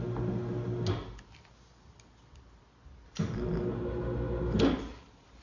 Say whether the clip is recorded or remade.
recorded